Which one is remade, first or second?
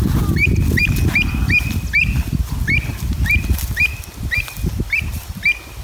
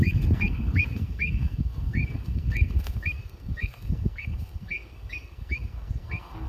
second